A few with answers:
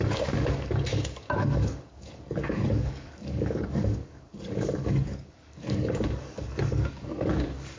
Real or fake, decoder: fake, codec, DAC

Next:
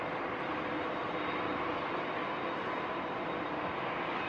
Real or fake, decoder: real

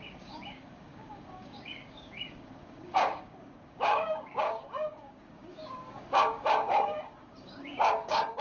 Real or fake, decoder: fake, codec, DAC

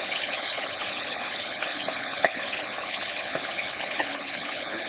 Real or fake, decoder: fake, codec, HILCodec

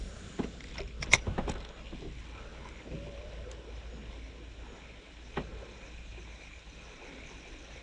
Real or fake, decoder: real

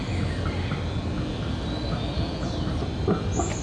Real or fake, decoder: real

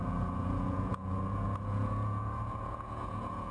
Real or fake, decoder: fake, vocoder, Vocos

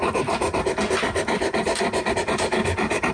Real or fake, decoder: real